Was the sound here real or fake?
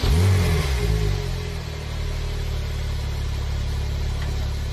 real